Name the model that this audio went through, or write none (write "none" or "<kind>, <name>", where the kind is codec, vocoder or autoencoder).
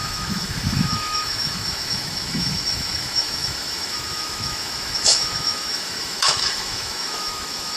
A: autoencoder, DAC-VAE